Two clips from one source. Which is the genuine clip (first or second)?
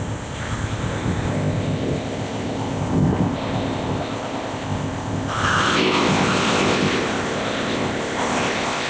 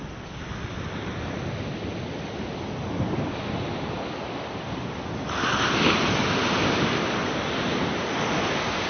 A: second